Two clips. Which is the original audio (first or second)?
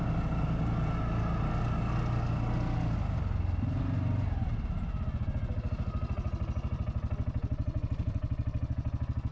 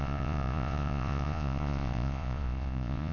first